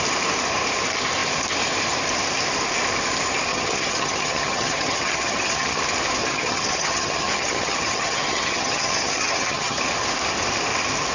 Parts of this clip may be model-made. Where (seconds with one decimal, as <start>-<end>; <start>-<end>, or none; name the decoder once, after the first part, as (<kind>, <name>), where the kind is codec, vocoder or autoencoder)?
3.5-5.8 (vocoder, HiFi-GAN); 6.2-9.8

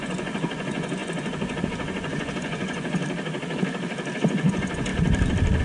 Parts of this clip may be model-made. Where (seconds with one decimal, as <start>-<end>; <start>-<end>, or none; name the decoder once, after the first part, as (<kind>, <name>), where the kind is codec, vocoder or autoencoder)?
0.0-3.0 (vocoder, Vocos); 4.2-4.9

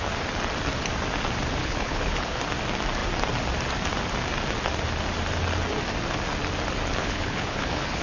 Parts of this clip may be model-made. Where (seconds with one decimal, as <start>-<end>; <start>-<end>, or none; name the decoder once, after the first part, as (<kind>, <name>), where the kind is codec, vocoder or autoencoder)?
1.6-2.4 (codec, HILCodec); 7.0-8.0